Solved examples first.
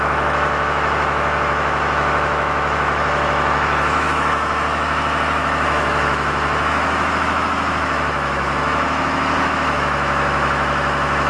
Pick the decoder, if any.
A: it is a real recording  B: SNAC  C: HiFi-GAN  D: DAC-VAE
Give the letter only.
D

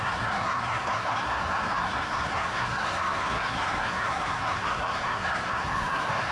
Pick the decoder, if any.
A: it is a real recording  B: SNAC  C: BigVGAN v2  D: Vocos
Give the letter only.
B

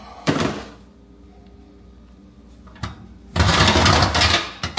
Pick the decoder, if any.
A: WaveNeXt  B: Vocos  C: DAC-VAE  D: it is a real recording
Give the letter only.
D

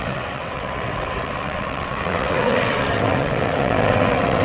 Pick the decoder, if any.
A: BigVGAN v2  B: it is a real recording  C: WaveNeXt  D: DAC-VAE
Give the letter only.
C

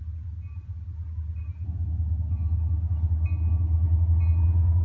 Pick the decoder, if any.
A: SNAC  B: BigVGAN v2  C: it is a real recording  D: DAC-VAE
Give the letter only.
C